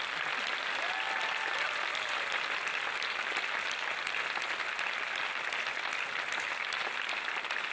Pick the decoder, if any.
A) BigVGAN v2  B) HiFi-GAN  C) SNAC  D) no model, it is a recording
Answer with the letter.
D